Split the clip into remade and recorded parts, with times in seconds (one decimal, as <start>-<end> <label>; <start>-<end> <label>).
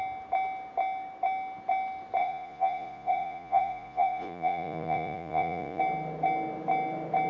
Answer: 0.0-2.2 recorded; 2.2-5.8 remade; 5.8-7.3 recorded